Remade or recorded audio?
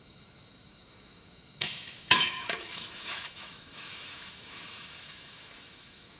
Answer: remade